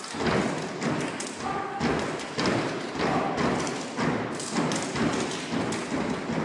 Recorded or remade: recorded